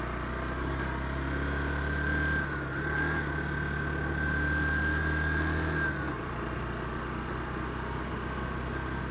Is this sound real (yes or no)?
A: yes